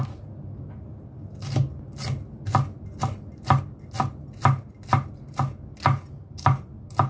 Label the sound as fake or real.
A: real